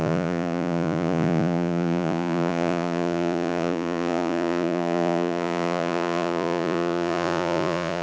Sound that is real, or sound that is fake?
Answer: fake